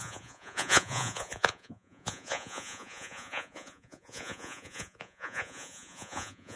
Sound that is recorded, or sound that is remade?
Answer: remade